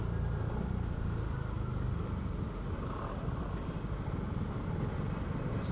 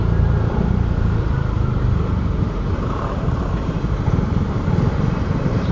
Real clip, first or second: first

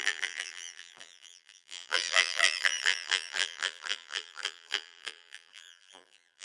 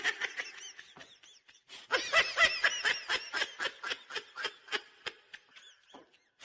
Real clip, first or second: second